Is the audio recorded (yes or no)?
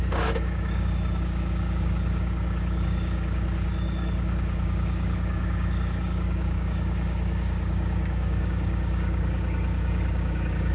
no